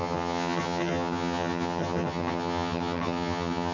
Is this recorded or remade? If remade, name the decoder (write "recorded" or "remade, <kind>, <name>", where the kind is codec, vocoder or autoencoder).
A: remade, vocoder, HiFi-GAN